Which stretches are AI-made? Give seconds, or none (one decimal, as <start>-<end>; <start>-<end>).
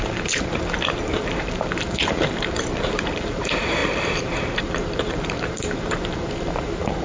0.0-7.0